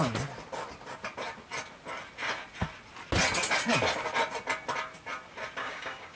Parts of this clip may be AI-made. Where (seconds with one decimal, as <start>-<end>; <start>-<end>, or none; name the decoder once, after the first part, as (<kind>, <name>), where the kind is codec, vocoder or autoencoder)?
5.6-6.2 (codec, DAC)

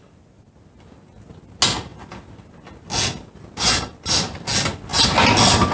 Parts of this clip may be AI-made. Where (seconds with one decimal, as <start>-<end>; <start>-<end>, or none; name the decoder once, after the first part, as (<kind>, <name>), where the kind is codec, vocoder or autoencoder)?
none